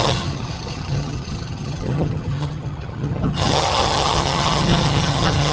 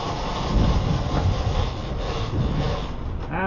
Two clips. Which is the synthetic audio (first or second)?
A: first